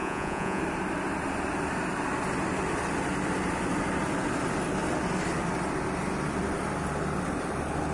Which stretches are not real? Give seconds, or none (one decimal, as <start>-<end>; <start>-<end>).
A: 0.0-0.6